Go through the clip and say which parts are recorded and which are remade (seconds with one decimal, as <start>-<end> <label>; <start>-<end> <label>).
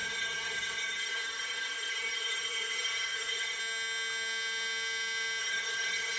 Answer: 0.0-3.6 remade; 3.6-5.4 recorded; 5.4-6.2 remade